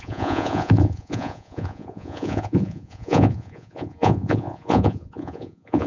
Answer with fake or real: fake